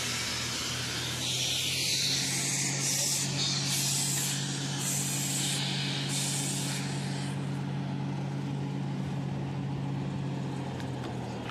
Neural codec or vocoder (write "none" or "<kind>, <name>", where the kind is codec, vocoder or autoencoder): none